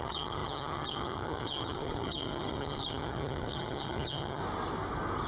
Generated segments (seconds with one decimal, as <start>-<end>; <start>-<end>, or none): 0.0-4.4